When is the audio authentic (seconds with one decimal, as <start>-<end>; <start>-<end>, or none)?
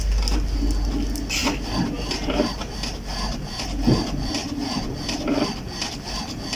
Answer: 0.0-6.6